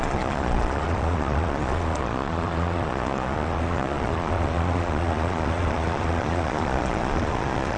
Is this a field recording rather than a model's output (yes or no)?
no